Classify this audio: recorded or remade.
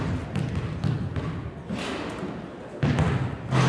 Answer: recorded